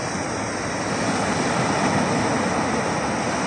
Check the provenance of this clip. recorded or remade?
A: recorded